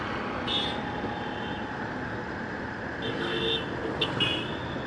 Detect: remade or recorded recorded